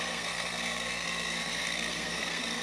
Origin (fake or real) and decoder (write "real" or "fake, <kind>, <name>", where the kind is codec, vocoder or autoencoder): fake, codec, SNAC